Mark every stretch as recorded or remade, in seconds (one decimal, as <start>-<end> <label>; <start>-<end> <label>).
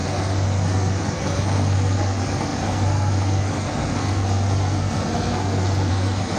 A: 0.0-6.4 remade